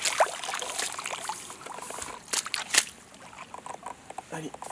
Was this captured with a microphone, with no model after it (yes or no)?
yes